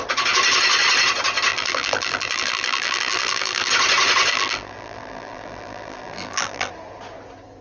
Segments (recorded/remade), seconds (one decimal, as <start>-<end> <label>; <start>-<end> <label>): 0.0-1.5 recorded; 1.5-3.7 remade; 3.7-4.3 recorded; 4.3-6.7 remade; 6.7-7.6 recorded